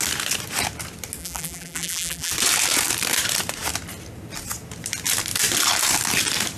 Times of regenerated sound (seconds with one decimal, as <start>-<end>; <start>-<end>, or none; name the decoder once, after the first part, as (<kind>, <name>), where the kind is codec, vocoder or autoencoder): 1.2-2.3 (vocoder, BigVGAN v2)